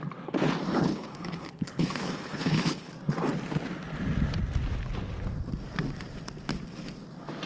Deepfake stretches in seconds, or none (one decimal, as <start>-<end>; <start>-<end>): 0.7-2.9